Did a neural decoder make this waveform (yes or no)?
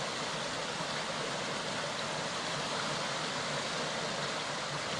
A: no